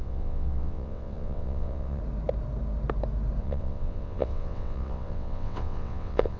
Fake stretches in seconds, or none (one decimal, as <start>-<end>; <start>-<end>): 0.0-2.0; 3.4-6.4